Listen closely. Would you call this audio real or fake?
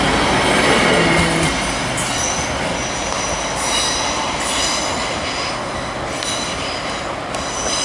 real